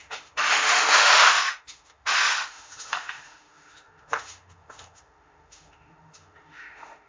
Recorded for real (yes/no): no